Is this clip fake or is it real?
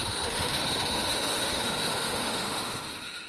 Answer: fake